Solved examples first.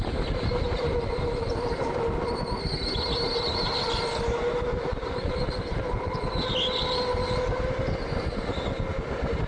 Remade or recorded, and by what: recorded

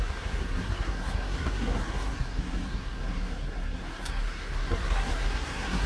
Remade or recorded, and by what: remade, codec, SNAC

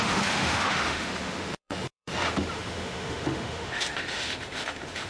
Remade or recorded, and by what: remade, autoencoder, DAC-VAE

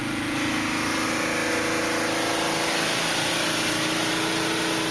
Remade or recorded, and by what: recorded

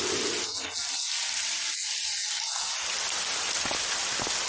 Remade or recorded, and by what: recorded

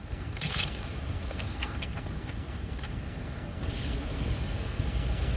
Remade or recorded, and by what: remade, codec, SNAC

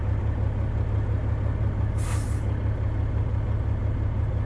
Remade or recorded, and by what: recorded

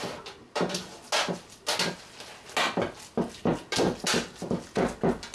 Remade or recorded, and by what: recorded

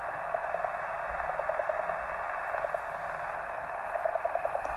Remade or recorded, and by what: recorded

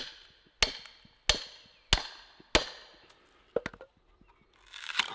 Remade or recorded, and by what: recorded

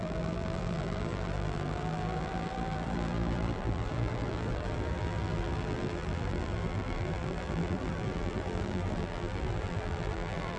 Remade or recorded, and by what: remade, vocoder, BigVGAN v2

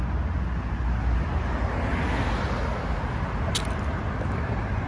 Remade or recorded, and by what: recorded